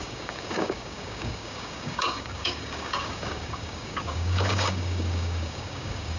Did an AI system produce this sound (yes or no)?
yes